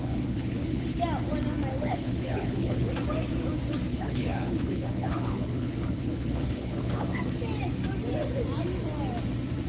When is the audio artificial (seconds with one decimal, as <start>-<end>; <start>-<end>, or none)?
0.0-1.0; 1.7-2.9; 3.9-7.2